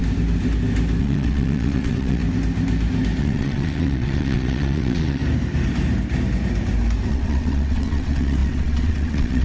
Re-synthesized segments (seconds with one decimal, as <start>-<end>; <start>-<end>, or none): 1.0-2.2; 3.2-5.2; 7.1-9.4